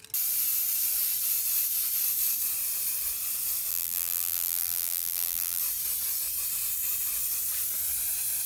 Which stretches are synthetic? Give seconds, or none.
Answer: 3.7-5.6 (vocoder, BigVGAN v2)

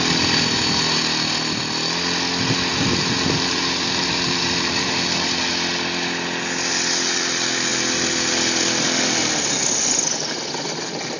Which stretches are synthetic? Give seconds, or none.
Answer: 2.7-5.5 (vocoder, BigVGAN v2)

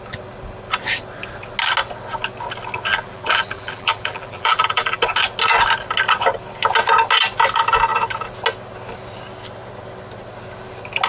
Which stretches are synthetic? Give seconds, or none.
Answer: 2.9-5.0 (vocoder, BigVGAN v2)